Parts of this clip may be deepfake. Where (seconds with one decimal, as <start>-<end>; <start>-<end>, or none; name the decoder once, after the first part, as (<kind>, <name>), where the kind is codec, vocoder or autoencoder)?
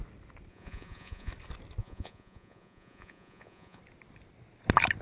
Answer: 0.5-1.3 (vocoder, Vocos); 1.8-3.8